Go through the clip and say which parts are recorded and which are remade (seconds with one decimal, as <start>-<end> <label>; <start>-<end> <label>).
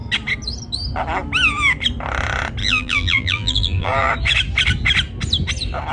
0.0-2.6 recorded; 2.6-4.1 remade; 4.1-5.9 recorded